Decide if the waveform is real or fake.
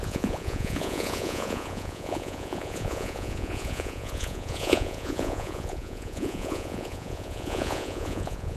fake